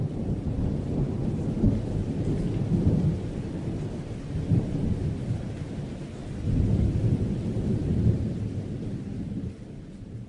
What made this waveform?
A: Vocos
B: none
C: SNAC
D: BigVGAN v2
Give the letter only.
B